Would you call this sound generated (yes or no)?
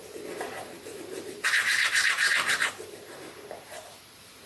yes